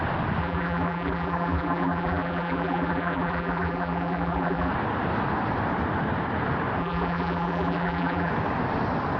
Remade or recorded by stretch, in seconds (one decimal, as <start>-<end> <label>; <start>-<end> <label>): 0.0-0.4 recorded; 0.4-4.7 remade; 4.7-6.8 recorded; 6.8-8.3 remade; 8.3-9.2 recorded